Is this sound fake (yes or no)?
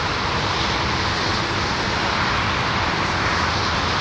no